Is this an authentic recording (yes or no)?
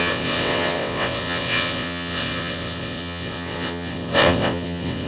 no